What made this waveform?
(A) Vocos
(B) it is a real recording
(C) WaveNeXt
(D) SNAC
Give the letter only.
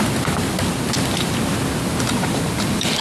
B